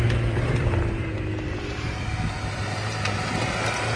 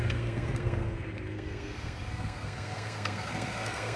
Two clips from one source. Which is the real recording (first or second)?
first